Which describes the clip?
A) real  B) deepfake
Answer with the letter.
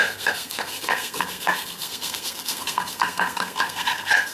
B